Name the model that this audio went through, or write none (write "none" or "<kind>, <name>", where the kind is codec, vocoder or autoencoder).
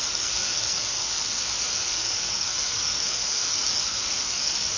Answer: codec, SNAC